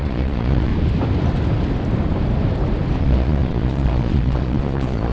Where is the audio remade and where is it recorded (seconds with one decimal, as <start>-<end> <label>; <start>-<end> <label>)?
0.0-0.7 remade; 0.7-3.0 recorded; 3.0-5.1 remade

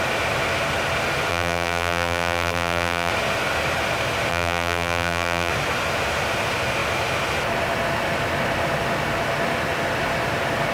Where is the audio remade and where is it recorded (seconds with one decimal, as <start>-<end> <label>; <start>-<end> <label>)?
0.0-1.3 recorded; 1.3-3.1 remade; 3.1-4.3 recorded; 4.3-5.5 remade; 5.5-10.7 recorded

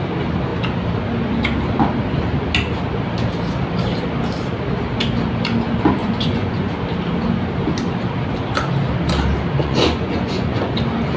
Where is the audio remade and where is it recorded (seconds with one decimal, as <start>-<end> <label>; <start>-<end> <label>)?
0.0-6.0 recorded; 6.0-6.7 remade; 6.7-9.6 recorded; 9.6-10.7 remade; 10.7-11.2 recorded

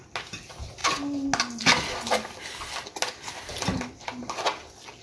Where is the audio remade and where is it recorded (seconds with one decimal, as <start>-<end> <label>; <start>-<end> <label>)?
0.0-5.0 recorded

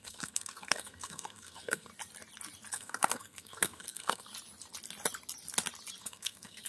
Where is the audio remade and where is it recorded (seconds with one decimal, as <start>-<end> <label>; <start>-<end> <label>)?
0.0-1.9 remade; 1.9-2.7 recorded; 2.7-4.3 remade; 4.3-6.0 recorded; 6.0-6.7 remade

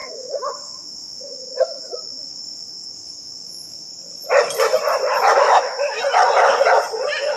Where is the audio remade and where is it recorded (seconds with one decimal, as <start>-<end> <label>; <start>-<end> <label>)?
0.0-3.9 remade; 3.9-5.3 recorded; 5.3-6.0 remade; 6.0-7.4 recorded

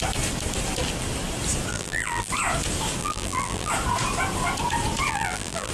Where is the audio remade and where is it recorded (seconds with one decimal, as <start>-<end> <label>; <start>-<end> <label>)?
0.0-1.7 recorded; 1.7-2.3 remade; 2.3-3.0 recorded; 3.0-3.7 remade; 3.7-5.1 recorded; 5.1-5.7 remade